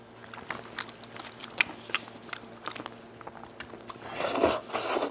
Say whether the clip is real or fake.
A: real